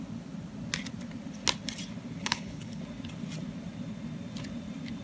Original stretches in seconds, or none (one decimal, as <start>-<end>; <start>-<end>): 0.0-2.2; 2.8-5.0